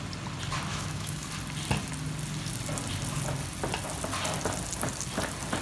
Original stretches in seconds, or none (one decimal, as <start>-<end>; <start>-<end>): 0.0-0.7; 1.3-5.6